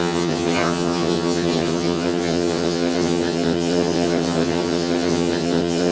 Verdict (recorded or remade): remade